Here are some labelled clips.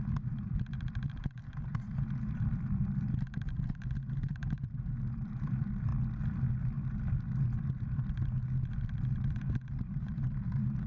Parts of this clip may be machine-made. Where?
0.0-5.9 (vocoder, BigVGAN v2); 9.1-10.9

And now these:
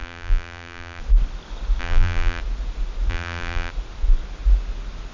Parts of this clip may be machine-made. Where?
0.0-1.0 (vocoder, BigVGAN v2); 1.8-2.4; 3.1-3.7

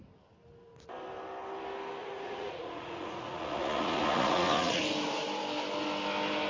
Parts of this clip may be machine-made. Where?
2.0-4.8 (vocoder, Vocos)

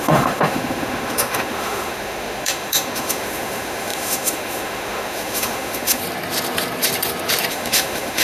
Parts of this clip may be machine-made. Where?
0.0-6.0 (autoencoder, DAC-VAE); 7.5-8.2

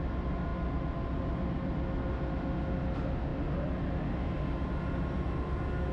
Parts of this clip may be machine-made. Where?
none